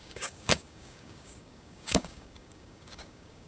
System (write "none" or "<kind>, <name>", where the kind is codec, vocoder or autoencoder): codec, DAC